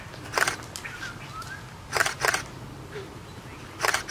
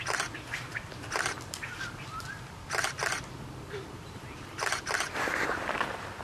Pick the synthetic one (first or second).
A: second